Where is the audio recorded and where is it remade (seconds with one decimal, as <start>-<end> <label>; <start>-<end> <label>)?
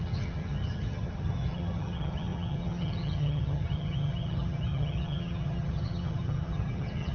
0.0-7.1 remade